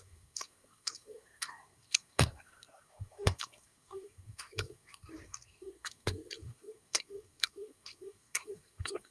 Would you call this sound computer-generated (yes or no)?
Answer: yes